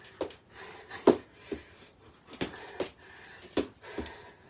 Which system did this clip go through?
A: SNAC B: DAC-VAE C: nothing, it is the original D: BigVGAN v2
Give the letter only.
C